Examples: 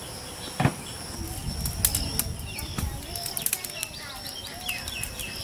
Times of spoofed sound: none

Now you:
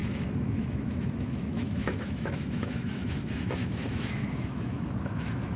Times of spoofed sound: 0.0-5.6 (autoencoder, DAC-VAE)

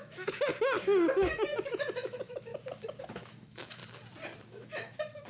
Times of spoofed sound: 0.0-0.5 (autoencoder, DAC-VAE); 1.1-2.5; 3.0-3.8; 4.5-5.3

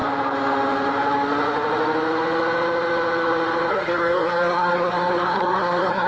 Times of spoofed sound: 3.7-6.1 (codec, SNAC)

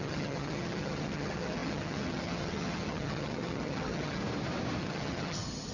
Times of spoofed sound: 0.0-4.2 (vocoder, HiFi-GAN); 4.8-5.7

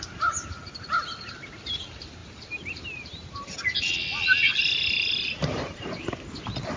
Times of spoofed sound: 2.2-2.8 (vocoder, BigVGAN v2)

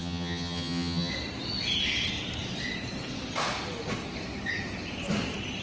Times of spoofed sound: 0.0-1.1 (vocoder, HiFi-GAN)

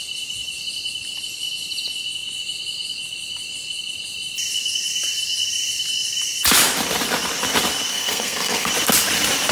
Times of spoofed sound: 7.9-8.7 (codec, SNAC)